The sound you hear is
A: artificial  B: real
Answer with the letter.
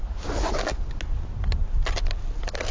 B